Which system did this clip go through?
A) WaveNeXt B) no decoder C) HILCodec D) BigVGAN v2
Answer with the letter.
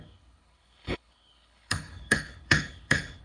C